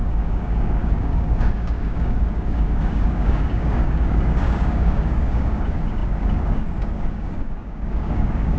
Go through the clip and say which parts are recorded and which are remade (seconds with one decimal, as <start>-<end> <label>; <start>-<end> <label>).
0.0-8.6 remade